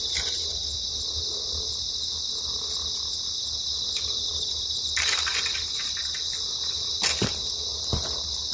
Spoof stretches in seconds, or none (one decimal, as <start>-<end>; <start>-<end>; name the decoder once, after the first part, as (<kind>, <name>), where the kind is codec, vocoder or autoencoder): none